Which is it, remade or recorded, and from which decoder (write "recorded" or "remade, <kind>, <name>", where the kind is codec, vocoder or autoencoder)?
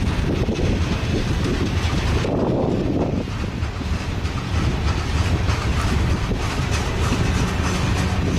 recorded